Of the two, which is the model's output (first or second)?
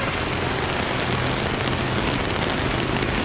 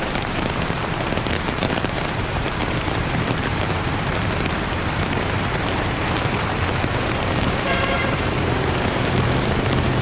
second